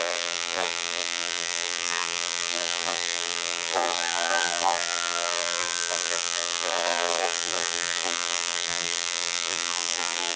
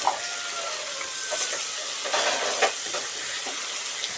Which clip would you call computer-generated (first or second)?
first